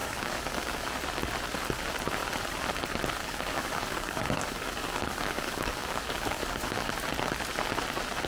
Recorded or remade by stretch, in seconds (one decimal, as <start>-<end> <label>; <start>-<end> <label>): 0.0-0.9 remade; 0.9-3.2 recorded; 3.2-6.9 remade; 6.9-8.3 recorded